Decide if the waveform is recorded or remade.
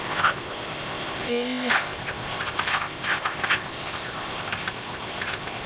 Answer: remade